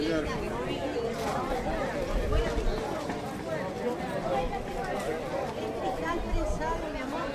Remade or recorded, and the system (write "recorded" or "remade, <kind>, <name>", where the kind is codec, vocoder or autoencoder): recorded